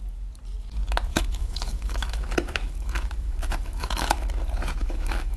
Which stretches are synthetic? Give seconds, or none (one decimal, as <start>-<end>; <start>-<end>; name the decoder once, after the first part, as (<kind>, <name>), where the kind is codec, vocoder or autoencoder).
1.1-4.3 (autoencoder, DAC-VAE); 4.8-5.4